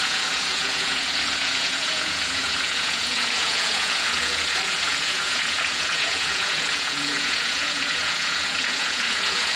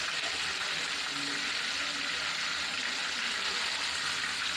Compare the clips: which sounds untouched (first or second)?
second